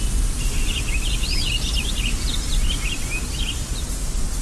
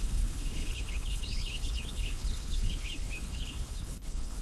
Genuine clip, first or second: first